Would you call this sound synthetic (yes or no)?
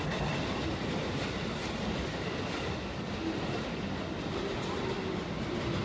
no